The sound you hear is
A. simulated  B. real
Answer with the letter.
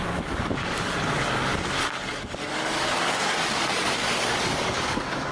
A